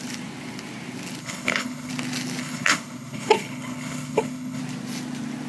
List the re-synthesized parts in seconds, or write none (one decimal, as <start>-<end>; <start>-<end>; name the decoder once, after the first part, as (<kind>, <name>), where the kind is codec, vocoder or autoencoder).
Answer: 1.2-1.9 (codec, HILCodec); 2.4-4.6